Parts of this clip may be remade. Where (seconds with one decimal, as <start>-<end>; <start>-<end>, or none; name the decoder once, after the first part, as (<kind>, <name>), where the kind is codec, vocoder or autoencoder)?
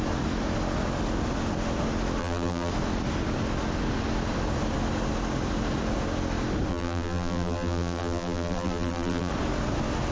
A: 2.2-2.7 (vocoder, BigVGAN v2); 6.7-9.3